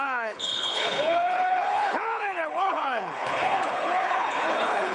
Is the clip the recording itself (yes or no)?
no